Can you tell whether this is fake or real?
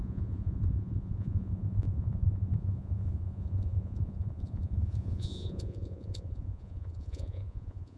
fake